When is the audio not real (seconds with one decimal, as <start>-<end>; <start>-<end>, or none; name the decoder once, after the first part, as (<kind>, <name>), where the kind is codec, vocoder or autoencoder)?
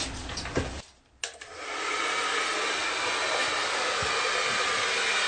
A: none